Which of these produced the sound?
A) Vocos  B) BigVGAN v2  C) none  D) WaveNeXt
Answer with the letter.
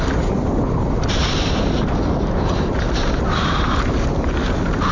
C